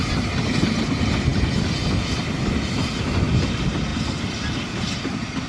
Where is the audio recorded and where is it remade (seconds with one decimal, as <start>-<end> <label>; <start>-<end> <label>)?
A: 0.0-5.5 recorded